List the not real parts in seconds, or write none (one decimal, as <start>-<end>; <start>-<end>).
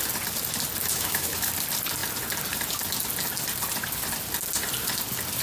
0.8-1.5